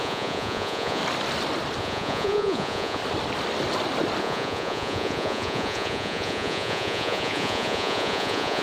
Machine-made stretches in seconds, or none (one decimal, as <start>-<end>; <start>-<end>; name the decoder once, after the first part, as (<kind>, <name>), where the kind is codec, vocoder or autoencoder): 0.0-1.0 (vocoder, Vocos); 1.8-3.0; 4.2-8.6